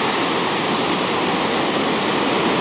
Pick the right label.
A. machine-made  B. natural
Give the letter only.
B